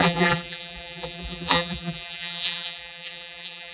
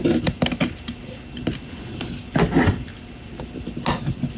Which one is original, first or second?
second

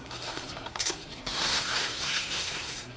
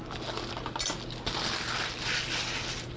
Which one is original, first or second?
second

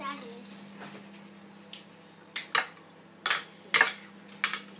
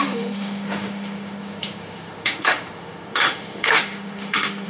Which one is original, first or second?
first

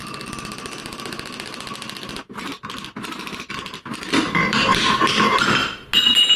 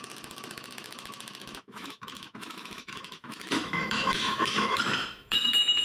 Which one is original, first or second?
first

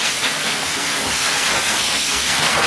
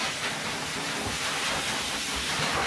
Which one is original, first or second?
second